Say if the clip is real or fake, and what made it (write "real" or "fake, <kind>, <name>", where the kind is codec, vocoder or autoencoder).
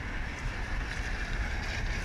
real